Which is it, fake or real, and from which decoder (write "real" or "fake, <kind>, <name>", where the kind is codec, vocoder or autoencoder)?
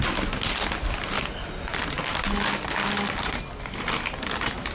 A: real